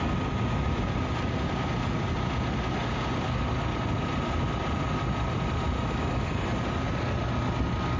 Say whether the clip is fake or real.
real